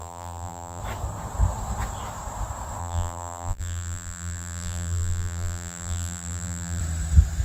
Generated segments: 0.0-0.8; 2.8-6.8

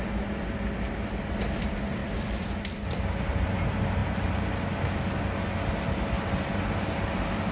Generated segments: 2.0-3.5

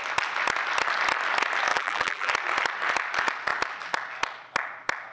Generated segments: 1.7-2.3

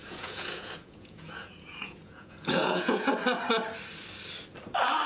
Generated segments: 0.0-3.1

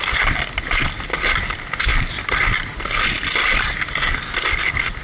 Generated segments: 1.9-4.3